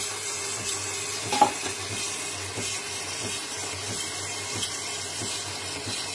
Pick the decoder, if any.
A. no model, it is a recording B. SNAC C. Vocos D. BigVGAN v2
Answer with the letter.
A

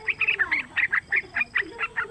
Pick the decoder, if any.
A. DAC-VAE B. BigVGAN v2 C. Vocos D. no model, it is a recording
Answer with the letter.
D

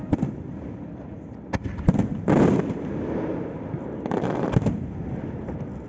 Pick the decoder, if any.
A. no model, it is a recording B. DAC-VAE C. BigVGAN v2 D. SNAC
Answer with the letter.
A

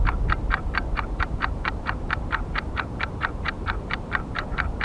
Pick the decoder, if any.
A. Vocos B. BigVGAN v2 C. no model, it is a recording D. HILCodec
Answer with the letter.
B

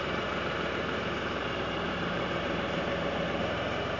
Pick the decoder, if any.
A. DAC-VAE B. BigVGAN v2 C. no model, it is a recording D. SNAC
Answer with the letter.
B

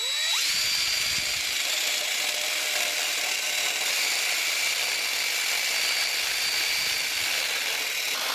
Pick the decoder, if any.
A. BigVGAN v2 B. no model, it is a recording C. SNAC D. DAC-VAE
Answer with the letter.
B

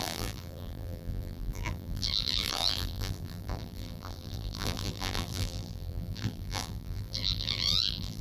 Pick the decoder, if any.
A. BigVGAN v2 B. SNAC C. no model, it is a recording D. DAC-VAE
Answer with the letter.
A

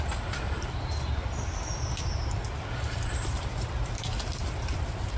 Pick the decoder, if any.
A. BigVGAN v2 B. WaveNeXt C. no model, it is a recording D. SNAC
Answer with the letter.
A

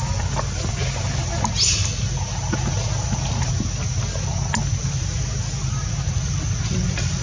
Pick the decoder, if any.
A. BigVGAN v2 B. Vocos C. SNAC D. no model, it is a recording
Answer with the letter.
D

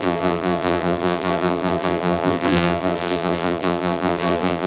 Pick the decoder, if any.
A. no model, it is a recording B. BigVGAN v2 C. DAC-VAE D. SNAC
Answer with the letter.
B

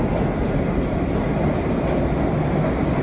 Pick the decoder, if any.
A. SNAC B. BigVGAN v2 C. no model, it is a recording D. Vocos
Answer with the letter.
C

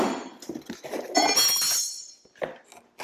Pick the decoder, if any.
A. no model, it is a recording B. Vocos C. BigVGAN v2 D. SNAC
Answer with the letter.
A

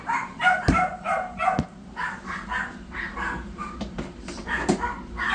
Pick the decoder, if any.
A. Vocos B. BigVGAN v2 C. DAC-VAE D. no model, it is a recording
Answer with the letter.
B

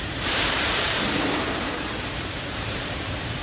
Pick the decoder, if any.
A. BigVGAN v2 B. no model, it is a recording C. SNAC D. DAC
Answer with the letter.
A